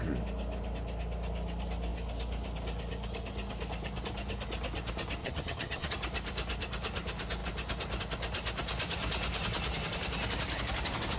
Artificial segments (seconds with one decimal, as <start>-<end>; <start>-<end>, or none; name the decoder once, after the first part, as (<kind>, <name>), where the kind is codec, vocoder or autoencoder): 5.2-5.9 (vocoder, HiFi-GAN)